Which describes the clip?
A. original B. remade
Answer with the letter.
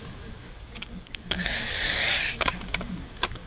B